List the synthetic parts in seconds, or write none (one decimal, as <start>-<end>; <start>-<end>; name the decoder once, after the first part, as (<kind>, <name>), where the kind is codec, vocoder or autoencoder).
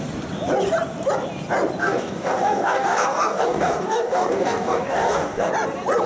1.8-5.5 (codec, DAC)